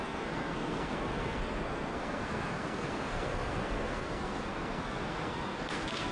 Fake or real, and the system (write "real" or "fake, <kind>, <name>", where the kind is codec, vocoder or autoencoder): fake, codec, SNAC